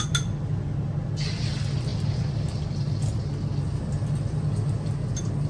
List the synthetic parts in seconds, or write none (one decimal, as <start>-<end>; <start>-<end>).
none